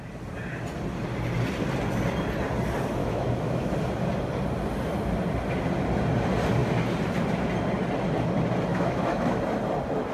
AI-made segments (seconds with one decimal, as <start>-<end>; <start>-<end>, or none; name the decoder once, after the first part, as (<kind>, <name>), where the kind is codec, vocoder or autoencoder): 3.0-3.7 (autoencoder, DAC-VAE); 8.7-9.4